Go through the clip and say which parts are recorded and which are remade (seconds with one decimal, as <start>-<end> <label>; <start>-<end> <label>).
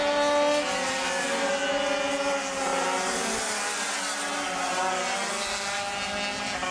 0.0-6.7 recorded